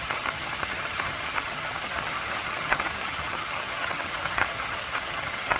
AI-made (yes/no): yes